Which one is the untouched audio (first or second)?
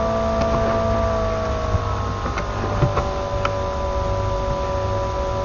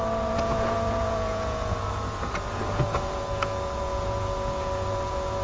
first